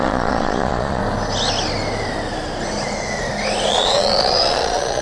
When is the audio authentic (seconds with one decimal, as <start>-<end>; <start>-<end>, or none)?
1.0-3.7